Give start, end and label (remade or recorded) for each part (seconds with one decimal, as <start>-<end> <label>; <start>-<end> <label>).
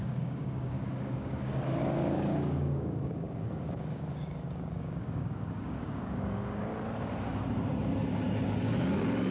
0.0-6.7 remade; 6.7-9.3 recorded